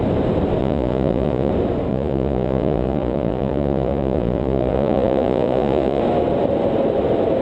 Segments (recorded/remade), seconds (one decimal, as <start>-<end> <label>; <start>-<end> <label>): 0.0-0.6 recorded; 0.6-1.5 remade; 1.5-1.9 recorded; 1.9-6.0 remade; 6.0-7.4 recorded